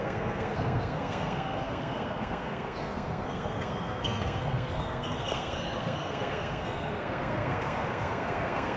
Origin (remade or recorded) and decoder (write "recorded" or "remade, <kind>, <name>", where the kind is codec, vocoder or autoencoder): remade, codec, SNAC